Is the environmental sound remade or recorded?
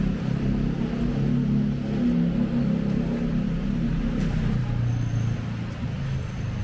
recorded